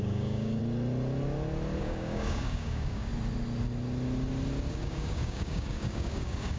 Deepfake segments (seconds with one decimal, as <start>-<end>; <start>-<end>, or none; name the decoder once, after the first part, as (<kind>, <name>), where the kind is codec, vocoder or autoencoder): 0.0-0.6 (codec, DAC); 1.8-3.1; 4.7-6.6